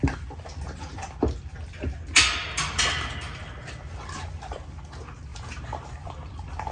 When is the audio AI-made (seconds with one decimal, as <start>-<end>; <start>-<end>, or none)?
5.3-6.3